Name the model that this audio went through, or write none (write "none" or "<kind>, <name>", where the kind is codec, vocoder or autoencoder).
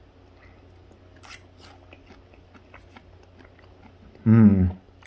none